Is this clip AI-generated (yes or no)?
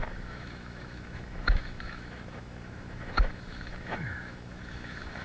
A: yes